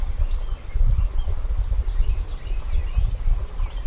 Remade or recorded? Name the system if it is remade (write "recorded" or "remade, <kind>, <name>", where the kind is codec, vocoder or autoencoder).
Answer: recorded